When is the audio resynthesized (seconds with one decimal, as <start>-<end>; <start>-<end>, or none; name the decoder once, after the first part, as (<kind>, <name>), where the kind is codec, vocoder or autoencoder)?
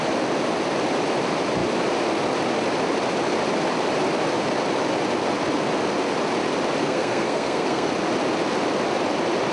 6.8-7.9 (codec, SNAC)